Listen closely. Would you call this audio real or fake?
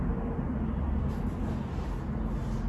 real